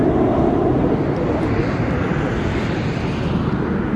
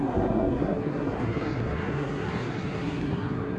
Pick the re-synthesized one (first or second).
second